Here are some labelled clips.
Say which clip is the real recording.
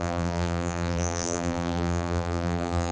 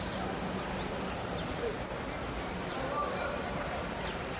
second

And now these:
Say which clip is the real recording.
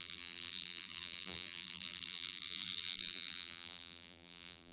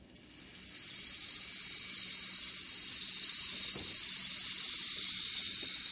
second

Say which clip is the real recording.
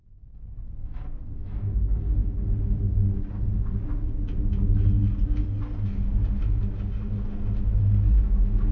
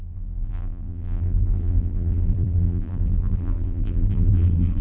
first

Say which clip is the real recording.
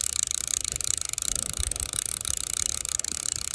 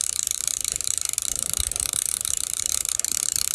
first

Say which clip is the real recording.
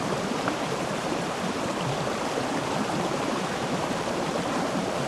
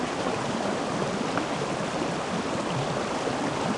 second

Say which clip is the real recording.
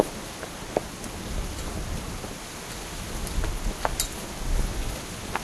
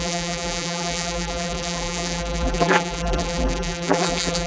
first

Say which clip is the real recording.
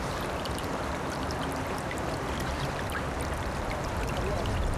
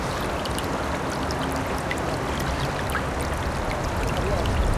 second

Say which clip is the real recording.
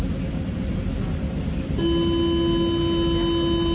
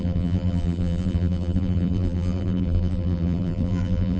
first